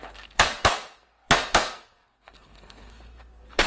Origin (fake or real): fake